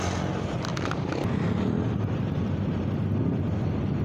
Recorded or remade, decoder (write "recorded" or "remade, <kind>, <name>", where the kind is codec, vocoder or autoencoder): recorded